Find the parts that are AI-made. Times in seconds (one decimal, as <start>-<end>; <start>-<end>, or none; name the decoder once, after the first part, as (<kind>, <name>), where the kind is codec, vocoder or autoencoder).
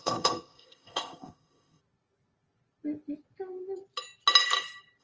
0.0-1.8 (codec, ZipCodec)